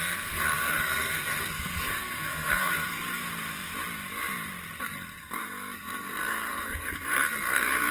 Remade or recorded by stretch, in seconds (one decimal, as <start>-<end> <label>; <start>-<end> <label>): 0.0-3.2 remade; 3.2-4.8 recorded; 4.8-7.9 remade